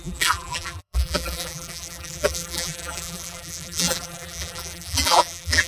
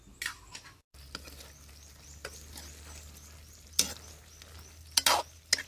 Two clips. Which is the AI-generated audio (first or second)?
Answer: first